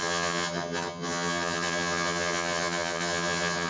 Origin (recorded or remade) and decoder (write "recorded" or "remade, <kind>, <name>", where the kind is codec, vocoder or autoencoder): remade, vocoder, HiFi-GAN